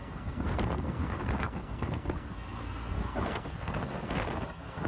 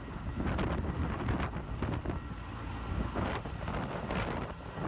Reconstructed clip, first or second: first